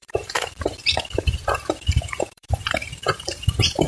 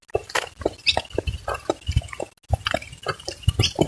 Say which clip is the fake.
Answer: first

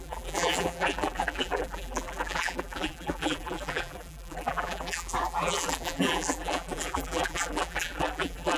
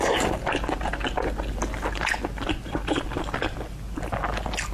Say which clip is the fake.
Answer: first